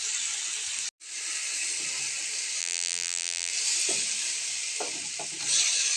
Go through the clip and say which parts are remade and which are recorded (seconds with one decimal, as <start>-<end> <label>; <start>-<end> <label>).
0.0-2.6 recorded; 2.6-3.5 remade; 3.5-6.0 recorded